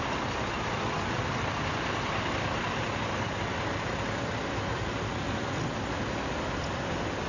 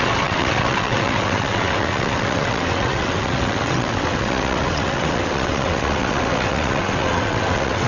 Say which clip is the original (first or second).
first